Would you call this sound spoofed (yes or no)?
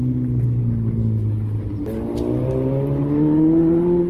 no